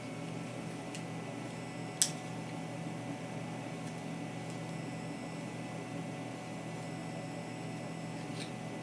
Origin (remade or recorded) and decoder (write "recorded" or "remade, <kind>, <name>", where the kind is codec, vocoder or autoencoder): recorded